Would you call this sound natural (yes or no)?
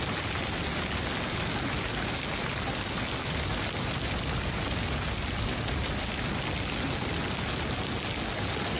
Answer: yes